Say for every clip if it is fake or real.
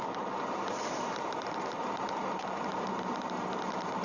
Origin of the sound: fake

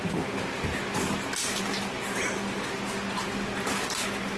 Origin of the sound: real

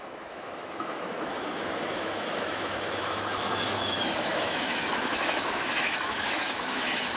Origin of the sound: fake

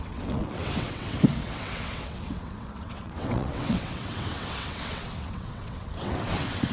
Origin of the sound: fake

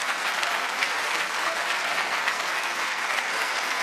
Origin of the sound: fake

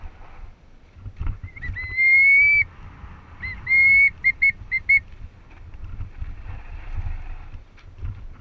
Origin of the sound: real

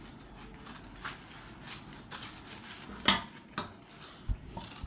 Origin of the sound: real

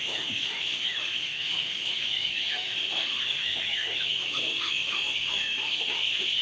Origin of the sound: fake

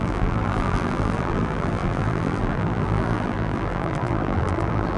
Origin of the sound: fake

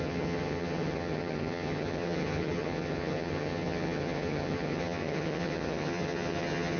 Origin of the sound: fake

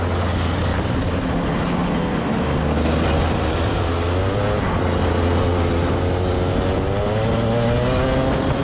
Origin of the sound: real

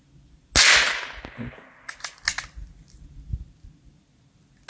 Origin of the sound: real